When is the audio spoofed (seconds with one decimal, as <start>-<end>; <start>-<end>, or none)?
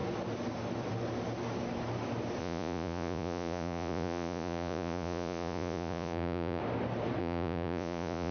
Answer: 2.4-6.6; 7.2-8.3